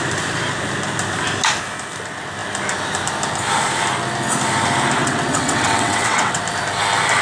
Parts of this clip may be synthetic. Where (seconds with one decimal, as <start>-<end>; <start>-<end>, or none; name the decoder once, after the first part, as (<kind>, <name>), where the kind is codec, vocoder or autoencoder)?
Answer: 5.0-6.4 (vocoder, WaveNeXt)